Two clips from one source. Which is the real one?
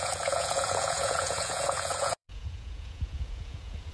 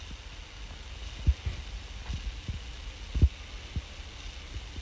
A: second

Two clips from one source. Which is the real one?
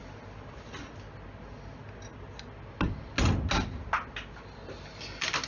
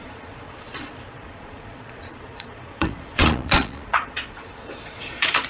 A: first